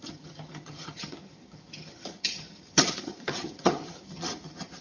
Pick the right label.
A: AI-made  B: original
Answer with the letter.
A